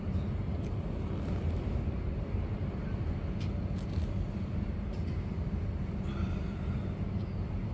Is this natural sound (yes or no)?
yes